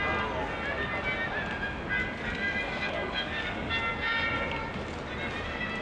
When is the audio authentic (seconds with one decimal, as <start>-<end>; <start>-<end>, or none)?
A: 0.0-2.0; 3.7-5.8